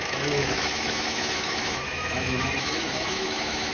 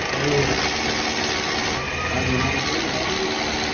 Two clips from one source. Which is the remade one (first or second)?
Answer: first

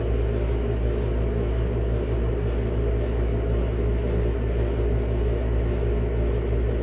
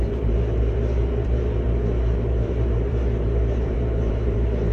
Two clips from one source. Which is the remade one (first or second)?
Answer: second